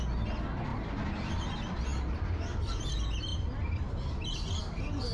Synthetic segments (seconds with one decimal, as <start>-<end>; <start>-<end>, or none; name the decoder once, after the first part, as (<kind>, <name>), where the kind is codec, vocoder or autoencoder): none